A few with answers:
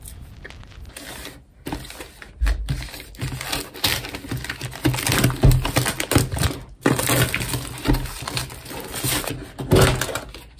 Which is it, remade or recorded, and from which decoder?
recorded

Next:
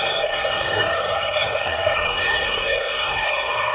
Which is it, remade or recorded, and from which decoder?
remade, codec, SNAC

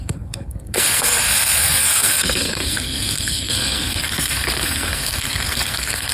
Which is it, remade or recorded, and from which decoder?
remade, codec, SNAC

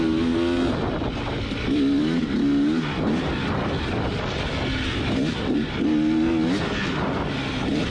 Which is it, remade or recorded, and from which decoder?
recorded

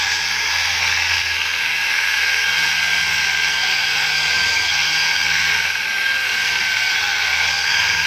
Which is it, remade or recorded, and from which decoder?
remade, codec, SNAC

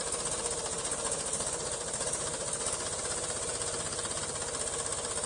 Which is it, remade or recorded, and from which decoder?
recorded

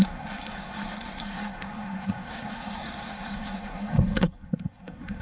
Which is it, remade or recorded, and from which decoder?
remade, codec, SNAC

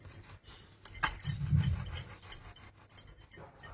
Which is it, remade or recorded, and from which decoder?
recorded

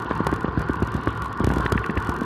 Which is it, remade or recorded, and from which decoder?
recorded